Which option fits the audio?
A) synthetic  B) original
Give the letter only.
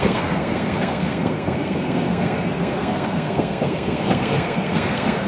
A